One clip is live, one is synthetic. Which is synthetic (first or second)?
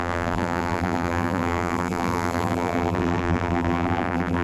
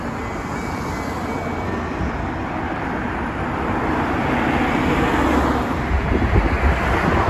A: first